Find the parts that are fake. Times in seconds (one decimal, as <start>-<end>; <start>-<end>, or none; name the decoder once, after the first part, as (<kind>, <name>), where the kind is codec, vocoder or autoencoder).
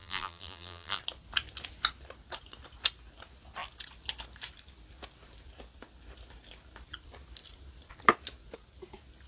0.0-1.0 (vocoder, BigVGAN v2)